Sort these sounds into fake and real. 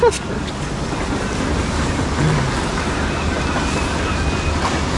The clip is real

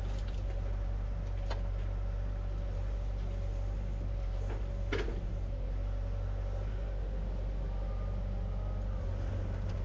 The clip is real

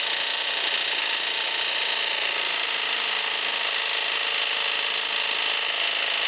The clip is fake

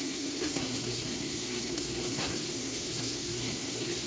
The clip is fake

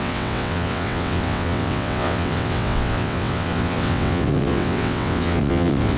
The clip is fake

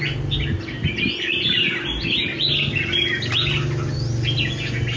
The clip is real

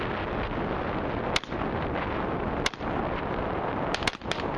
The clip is real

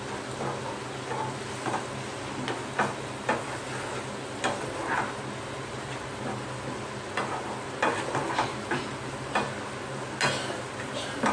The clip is real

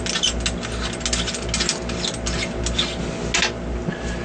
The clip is real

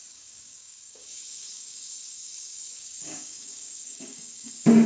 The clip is fake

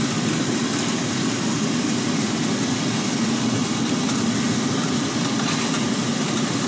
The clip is real